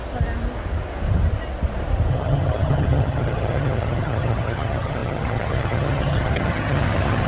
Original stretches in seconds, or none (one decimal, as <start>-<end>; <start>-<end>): 0.0-2.1